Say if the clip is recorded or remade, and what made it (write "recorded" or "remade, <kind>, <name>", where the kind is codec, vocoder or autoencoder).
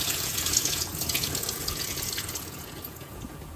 remade, vocoder, Vocos